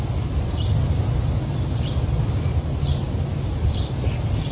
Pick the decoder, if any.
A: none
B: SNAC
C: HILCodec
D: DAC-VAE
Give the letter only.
A